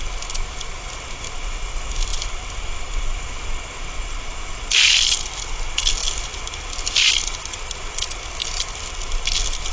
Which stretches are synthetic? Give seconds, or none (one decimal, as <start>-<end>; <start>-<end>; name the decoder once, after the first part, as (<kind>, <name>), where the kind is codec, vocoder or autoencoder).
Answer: none